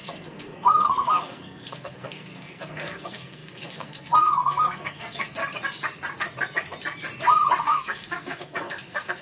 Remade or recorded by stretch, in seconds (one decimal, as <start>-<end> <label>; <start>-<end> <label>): 0.0-5.4 remade; 5.4-7.6 recorded; 7.6-9.2 remade